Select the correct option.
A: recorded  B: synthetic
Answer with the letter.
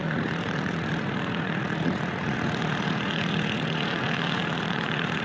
B